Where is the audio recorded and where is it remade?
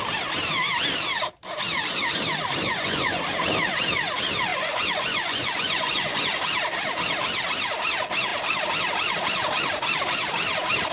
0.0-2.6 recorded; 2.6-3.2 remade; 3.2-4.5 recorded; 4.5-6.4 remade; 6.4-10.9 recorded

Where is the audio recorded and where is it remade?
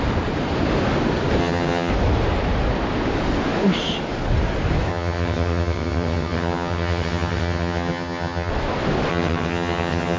0.0-1.4 recorded; 1.4-1.9 remade; 1.9-4.9 recorded; 4.9-8.5 remade; 8.5-9.1 recorded; 9.1-10.2 remade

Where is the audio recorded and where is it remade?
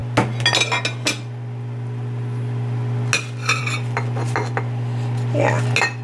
0.0-6.0 recorded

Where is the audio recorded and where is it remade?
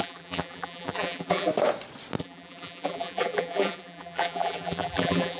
0.0-1.5 remade; 1.5-2.2 recorded; 2.2-5.4 remade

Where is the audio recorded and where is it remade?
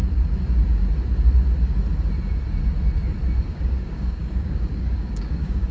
0.0-3.4 recorded; 3.4-5.7 remade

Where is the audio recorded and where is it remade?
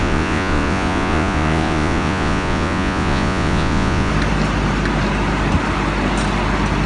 0.0-4.1 remade; 4.1-6.9 recorded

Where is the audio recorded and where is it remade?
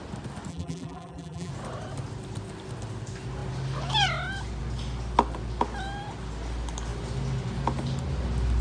0.0-0.5 recorded; 0.5-1.5 remade; 1.5-8.6 recorded